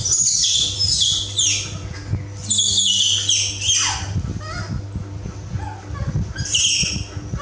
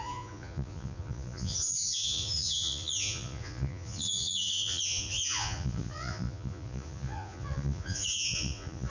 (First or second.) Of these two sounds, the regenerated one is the second